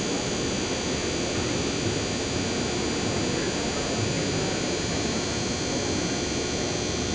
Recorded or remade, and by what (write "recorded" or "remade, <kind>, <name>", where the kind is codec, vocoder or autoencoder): remade, vocoder, BigVGAN v2